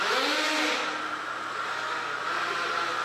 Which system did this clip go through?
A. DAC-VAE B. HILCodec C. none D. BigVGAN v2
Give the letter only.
C